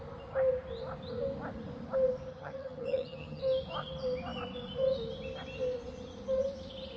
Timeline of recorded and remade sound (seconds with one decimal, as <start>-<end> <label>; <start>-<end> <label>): 0.0-2.3 recorded; 2.3-3.4 remade; 3.4-7.0 recorded